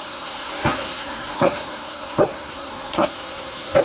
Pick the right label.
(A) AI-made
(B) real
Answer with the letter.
A